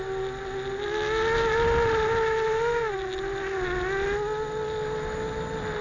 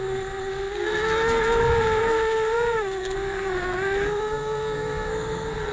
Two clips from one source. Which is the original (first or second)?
first